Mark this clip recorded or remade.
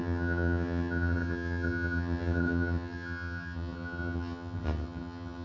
remade